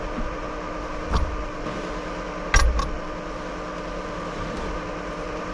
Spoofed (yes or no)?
no